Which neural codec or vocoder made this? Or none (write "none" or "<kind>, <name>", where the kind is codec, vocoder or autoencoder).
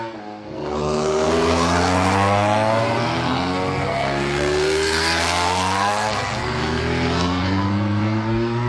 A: codec, SNAC